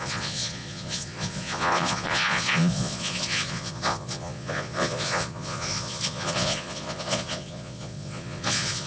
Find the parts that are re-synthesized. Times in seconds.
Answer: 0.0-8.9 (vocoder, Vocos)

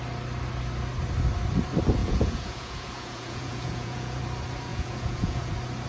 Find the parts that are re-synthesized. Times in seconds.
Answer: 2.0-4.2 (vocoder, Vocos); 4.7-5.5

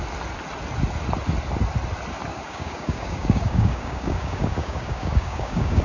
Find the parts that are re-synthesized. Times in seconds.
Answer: 2.3-5.8 (codec, DAC)

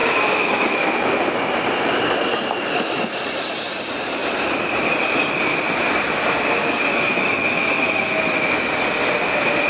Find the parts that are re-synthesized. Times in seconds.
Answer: 0.0-1.1 (autoencoder, DAC-VAE); 6.6-8.5

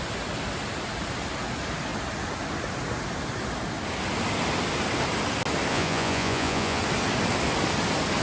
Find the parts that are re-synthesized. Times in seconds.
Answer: 5.7-6.8 (vocoder, Vocos)

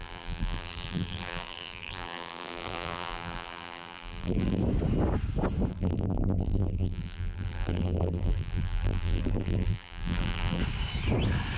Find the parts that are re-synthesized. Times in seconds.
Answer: 0.0-4.6 (vocoder, BigVGAN v2); 5.7-10.6

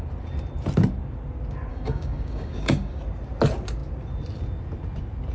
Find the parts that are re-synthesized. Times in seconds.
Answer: 1.7-3.0 (codec, DAC)